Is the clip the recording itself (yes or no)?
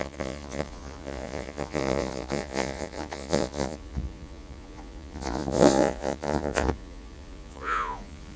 no